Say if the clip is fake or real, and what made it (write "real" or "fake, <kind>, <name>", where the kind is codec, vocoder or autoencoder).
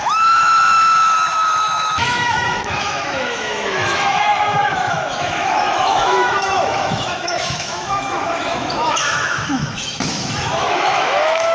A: fake, autoencoder, DAC-VAE